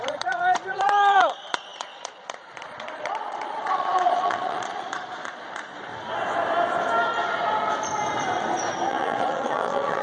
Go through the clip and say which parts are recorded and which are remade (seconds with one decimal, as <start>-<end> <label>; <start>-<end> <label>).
0.0-5.9 remade; 5.9-8.9 recorded; 8.9-10.0 remade